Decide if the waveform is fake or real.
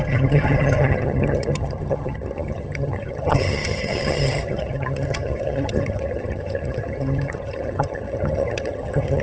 fake